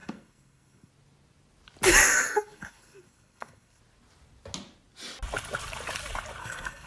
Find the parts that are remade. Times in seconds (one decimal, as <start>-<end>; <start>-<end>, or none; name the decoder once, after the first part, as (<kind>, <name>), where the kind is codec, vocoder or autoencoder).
0.0-0.9 (codec, SNAC); 2.0-3.8; 6.4-6.9